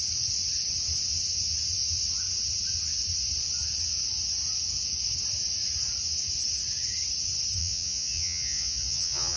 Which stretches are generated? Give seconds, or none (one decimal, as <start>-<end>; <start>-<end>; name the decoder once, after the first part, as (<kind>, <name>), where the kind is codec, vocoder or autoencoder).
7.6-9.4 (vocoder, Vocos)